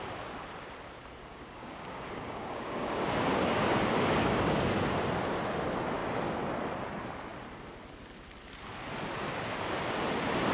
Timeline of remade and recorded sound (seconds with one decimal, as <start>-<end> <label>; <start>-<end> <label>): 0.0-1.3 recorded; 1.3-4.5 remade; 4.5-10.5 recorded